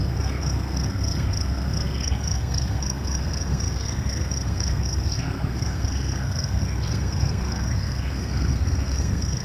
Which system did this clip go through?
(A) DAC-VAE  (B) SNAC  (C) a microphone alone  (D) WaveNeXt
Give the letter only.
B